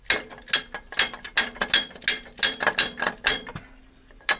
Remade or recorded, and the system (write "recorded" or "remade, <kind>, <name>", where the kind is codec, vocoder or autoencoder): recorded